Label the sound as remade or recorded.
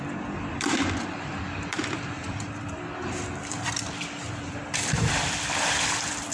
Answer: remade